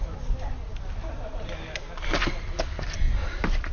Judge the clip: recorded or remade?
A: recorded